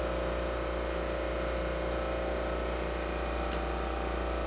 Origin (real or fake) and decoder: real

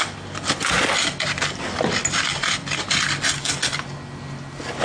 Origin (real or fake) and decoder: real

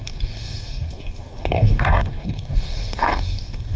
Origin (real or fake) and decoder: fake, codec, DAC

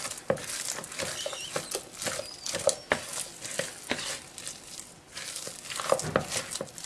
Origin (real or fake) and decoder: real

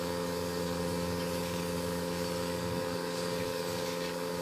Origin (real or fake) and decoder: fake, codec, DAC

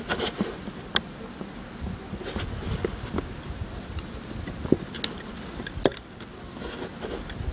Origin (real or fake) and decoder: real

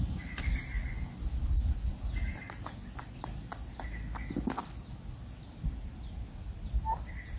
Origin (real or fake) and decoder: real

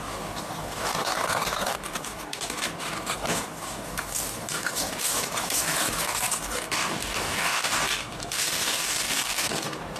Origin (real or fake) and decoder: fake, codec, DAC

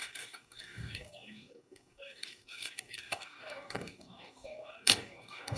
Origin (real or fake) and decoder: fake, codec, DAC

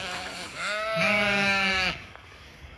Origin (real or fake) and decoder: fake, codec, DAC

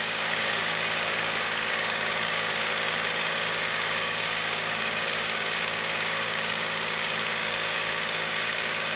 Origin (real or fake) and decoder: fake, codec, DAC